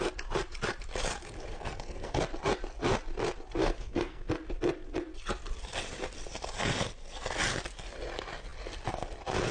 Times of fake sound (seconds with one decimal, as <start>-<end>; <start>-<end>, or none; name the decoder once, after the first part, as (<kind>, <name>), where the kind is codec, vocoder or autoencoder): 1.5-2.2 (codec, SNAC); 3.6-4.3